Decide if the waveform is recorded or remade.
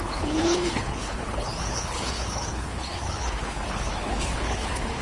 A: remade